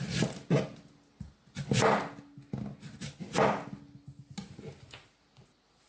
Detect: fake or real real